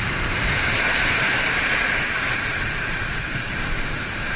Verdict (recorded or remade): remade